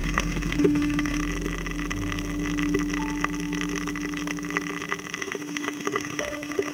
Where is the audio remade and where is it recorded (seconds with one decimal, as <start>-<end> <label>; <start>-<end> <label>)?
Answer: 0.0-1.2 remade; 1.2-5.2 recorded; 5.2-6.7 remade